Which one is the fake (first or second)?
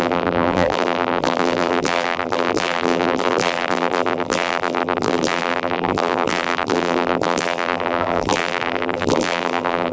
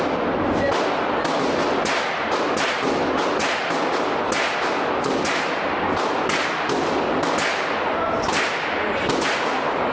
first